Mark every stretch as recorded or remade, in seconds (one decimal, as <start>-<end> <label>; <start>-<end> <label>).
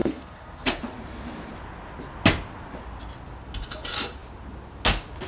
0.0-0.8 remade; 0.8-5.3 recorded